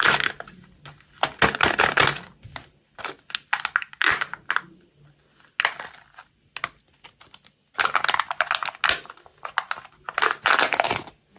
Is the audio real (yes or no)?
yes